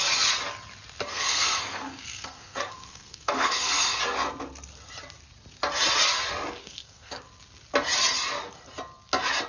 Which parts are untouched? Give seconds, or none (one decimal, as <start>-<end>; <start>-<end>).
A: 0.0-1.1; 4.0-6.6; 7.3-9.5